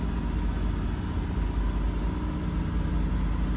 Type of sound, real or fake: real